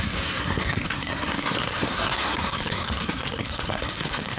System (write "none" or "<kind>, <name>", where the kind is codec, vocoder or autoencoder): codec, SNAC